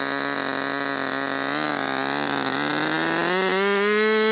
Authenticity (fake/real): real